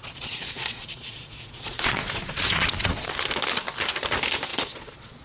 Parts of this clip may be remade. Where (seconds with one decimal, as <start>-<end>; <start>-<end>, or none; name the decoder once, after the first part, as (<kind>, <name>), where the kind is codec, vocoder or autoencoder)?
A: 0.0-3.1 (vocoder, Vocos); 4.5-5.2